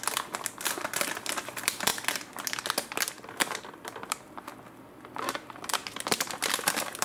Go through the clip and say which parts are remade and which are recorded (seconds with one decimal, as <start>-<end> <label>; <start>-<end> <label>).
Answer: 0.0-1.9 remade; 1.9-3.3 recorded; 3.3-4.5 remade; 4.5-6.3 recorded; 6.3-7.0 remade